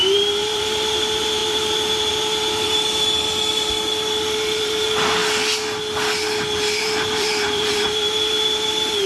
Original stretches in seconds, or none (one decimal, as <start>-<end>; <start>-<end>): 5.2-6.8